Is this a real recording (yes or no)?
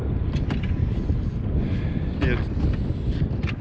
yes